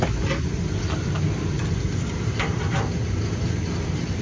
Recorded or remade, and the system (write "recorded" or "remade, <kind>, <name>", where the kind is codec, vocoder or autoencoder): recorded